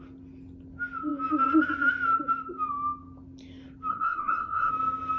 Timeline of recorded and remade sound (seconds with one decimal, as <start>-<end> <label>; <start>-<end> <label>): 0.0-3.9 recorded; 3.9-4.7 remade; 4.7-5.2 recorded